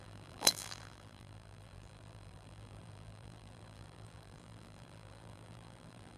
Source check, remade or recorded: remade